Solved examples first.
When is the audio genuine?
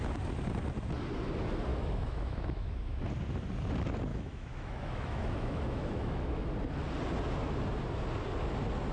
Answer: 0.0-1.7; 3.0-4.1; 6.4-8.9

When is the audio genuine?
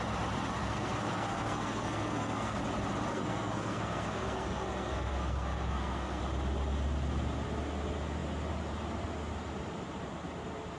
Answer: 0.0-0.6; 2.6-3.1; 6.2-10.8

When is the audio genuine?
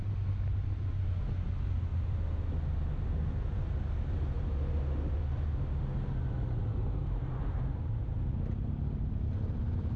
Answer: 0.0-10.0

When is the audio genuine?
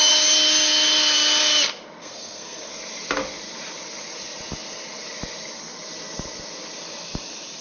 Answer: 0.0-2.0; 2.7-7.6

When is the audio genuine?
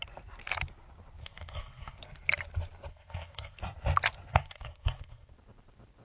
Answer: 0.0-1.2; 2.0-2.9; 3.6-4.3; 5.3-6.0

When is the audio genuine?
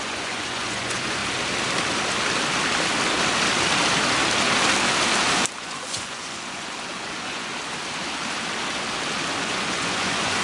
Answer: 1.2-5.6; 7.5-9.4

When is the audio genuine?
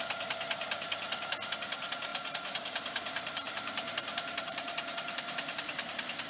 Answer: 0.0-2.1